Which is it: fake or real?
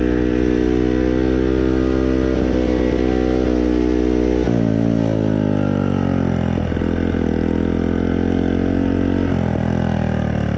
real